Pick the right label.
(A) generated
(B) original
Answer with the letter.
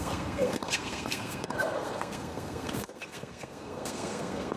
A